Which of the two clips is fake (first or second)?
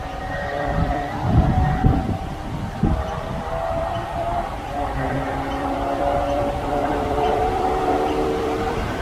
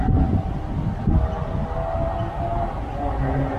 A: first